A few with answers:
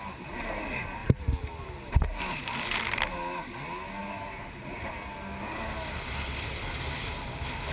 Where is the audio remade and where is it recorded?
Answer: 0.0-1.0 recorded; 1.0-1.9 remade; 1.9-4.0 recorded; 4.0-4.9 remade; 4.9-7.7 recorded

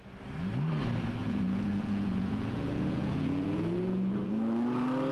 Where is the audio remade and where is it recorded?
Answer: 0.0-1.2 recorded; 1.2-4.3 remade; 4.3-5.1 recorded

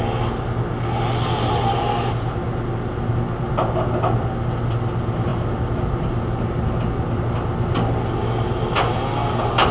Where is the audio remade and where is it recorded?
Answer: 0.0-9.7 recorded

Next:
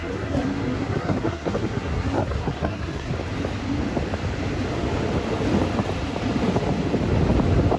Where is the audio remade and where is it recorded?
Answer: 0.0-3.1 remade; 3.1-7.8 recorded

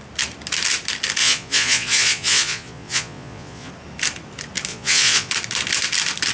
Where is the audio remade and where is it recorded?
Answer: 0.0-1.2 recorded; 1.2-3.7 remade; 3.7-4.7 recorded; 4.7-5.3 remade; 5.3-6.3 recorded

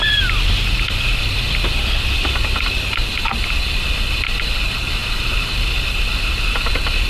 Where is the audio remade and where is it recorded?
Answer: 0.0-7.1 recorded

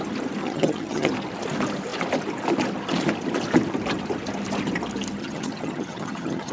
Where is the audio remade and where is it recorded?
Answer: 0.0-0.4 recorded; 0.4-1.1 remade; 1.1-5.2 recorded; 5.2-6.5 remade

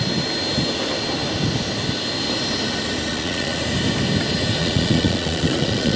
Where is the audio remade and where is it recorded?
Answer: 0.0-3.1 recorded; 3.1-3.6 remade; 3.6-4.6 recorded; 4.6-6.0 remade